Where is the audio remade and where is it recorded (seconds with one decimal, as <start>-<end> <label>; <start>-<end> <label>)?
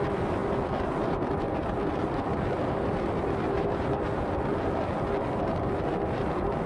0.0-0.4 recorded; 0.4-4.4 remade; 4.4-6.7 recorded